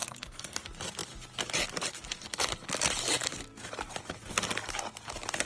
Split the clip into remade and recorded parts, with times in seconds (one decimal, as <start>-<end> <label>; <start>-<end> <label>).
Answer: 0.0-0.6 remade; 0.6-5.5 recorded